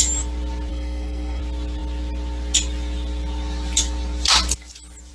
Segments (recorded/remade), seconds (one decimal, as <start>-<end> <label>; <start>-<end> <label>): 0.0-0.7 recorded; 0.7-1.4 remade; 1.4-5.1 recorded